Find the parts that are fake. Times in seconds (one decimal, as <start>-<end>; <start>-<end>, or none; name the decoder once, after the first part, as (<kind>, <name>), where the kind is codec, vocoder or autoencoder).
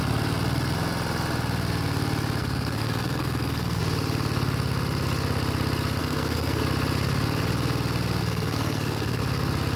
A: 2.4-3.8 (codec, SNAC); 6.0-6.6; 8.2-9.2